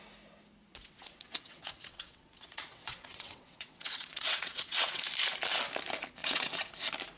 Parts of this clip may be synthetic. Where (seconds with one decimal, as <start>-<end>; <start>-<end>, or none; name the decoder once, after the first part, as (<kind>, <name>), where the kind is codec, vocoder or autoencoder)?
0.7-5.0 (vocoder, WaveNeXt); 6.2-6.7